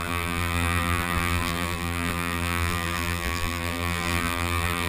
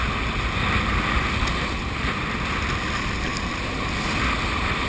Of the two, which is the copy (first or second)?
first